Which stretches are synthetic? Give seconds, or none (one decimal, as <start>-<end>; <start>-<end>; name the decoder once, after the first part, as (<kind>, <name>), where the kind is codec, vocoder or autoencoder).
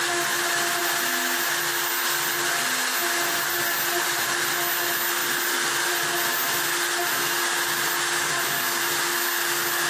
none